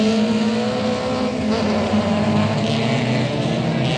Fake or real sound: real